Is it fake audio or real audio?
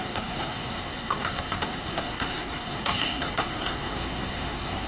fake